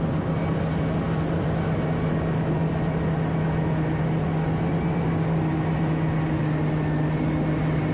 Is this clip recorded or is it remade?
recorded